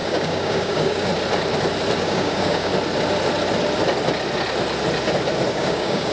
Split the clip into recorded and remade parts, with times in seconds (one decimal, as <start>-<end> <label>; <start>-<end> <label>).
0.0-1.1 remade; 1.1-2.0 recorded; 2.0-2.7 remade; 2.7-5.5 recorded; 5.5-6.1 remade